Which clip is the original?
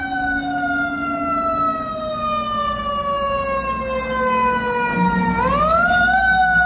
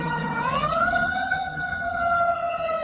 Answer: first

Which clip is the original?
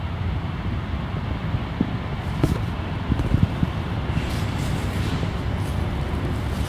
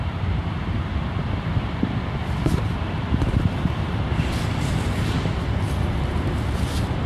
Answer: first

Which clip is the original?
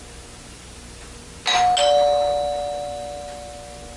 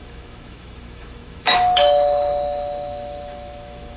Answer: first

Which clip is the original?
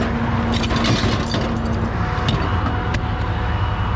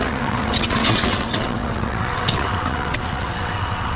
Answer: first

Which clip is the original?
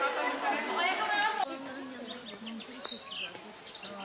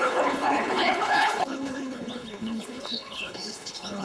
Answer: first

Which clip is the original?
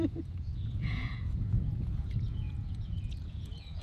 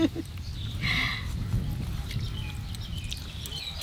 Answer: second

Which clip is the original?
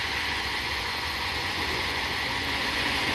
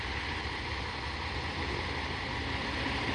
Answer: second